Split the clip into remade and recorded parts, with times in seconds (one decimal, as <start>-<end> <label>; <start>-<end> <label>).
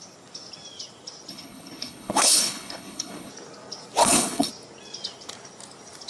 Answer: 0.0-1.3 recorded; 1.3-3.3 remade; 3.3-4.0 recorded; 4.0-4.5 remade; 4.5-6.1 recorded